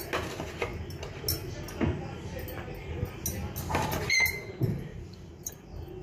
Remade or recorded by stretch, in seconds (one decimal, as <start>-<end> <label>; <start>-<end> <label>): 0.0-4.9 recorded; 4.9-5.5 remade; 5.5-6.0 recorded